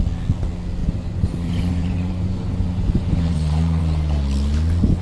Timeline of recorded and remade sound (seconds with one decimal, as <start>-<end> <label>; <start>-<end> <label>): 0.0-0.8 recorded; 0.8-3.8 remade; 3.8-5.0 recorded